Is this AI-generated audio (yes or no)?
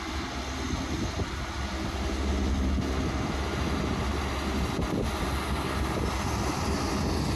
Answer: no